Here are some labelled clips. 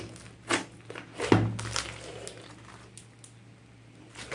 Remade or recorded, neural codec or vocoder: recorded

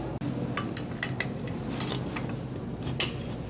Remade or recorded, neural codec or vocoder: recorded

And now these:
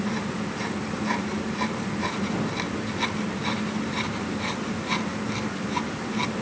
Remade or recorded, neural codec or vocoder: recorded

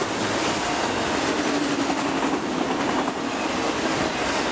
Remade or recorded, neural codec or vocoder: recorded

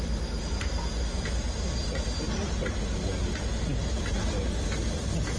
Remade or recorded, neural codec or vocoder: recorded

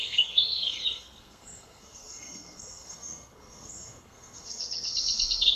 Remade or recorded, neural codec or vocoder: remade, codec, SNAC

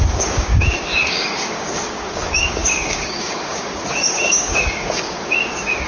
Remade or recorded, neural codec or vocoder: remade, codec, DAC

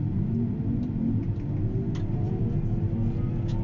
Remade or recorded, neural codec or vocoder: recorded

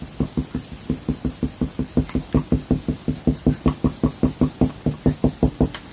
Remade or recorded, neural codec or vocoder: recorded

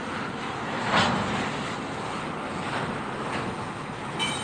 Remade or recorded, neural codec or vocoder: recorded